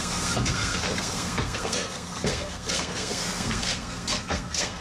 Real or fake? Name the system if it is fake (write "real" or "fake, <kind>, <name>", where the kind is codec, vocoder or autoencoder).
fake, codec, SNAC